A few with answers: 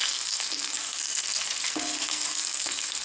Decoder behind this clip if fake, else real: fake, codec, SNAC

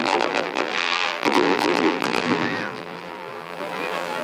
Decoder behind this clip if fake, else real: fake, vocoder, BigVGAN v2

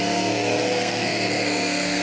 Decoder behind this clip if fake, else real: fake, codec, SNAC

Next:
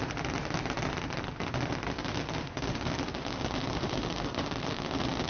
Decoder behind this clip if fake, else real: real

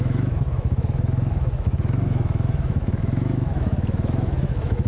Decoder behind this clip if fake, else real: fake, autoencoder, DAC-VAE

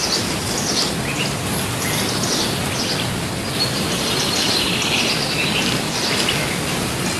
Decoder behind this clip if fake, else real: real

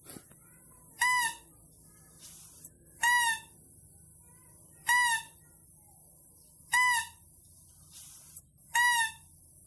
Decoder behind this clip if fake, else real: real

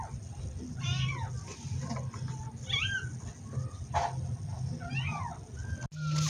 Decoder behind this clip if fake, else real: real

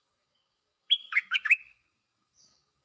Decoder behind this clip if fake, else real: fake, codec, DAC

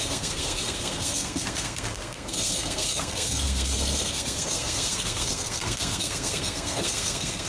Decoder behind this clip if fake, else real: fake, codec, SNAC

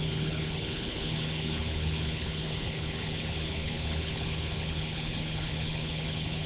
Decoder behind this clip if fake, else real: fake, codec, HILCodec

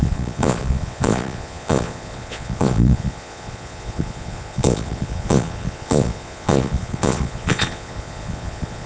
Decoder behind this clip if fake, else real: fake, vocoder, Vocos